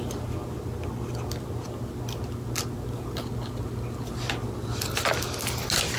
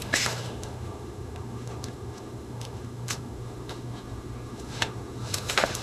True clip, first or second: first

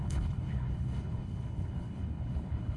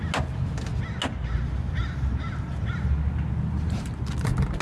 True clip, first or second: second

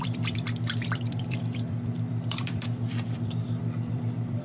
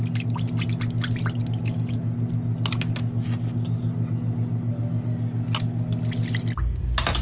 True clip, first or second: second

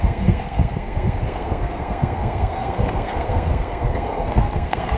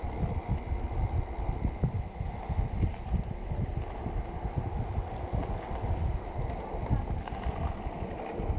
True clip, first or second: second